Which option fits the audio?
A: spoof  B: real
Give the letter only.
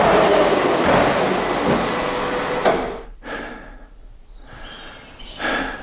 B